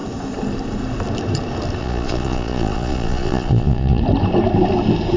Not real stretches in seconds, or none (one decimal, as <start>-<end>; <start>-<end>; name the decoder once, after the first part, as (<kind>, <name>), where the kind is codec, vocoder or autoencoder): 1.8-4.0 (vocoder, Vocos)